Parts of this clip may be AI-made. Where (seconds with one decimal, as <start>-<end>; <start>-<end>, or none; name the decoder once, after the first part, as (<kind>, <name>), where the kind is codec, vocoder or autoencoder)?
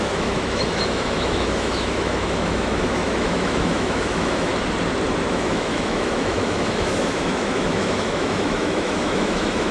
0.0-4.5 (autoencoder, DAC-VAE); 5.3-9.7